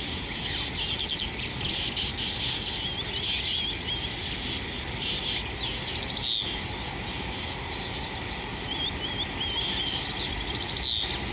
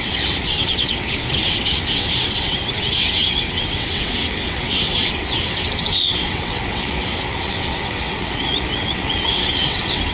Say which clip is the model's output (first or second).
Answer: second